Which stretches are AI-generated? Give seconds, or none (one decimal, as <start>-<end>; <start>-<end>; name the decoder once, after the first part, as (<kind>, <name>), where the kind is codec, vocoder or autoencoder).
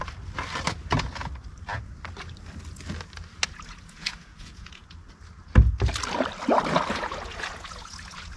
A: 3.5-4.8 (vocoder, Vocos); 6.9-8.4